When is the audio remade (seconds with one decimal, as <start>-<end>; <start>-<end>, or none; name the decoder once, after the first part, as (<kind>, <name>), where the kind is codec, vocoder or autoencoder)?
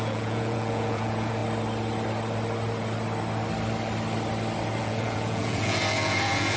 0.0-1.4 (vocoder, Vocos); 4.8-6.6